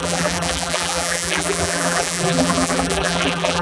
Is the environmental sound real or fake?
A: fake